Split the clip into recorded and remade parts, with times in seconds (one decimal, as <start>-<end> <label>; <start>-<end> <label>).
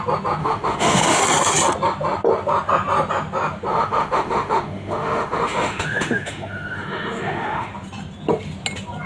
0.0-0.4 recorded; 0.4-1.2 remade; 1.2-3.7 recorded; 3.7-7.7 remade; 7.7-9.1 recorded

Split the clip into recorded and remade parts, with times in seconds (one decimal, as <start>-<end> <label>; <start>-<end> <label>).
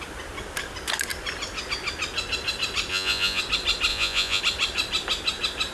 0.0-2.9 recorded; 2.9-3.4 remade; 3.4-3.9 recorded; 3.9-4.4 remade; 4.4-5.7 recorded